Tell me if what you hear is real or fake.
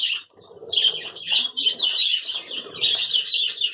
fake